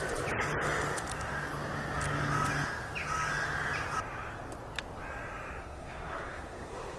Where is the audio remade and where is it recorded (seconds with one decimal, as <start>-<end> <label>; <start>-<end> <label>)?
0.0-5.6 recorded; 5.6-7.0 remade